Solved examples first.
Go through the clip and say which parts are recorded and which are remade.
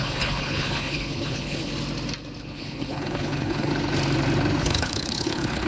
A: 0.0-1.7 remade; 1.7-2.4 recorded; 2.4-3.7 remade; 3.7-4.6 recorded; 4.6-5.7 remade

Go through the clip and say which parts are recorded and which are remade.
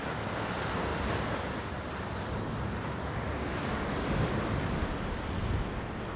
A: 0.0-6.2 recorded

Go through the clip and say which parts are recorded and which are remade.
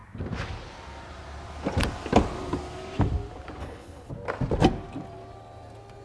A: 0.0-3.6 recorded; 3.6-4.1 remade; 4.1-6.0 recorded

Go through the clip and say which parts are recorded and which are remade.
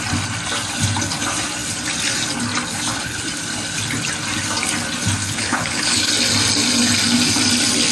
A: 0.0-2.7 recorded; 2.7-3.2 remade; 3.2-5.2 recorded; 5.2-6.1 remade; 6.1-7.9 recorded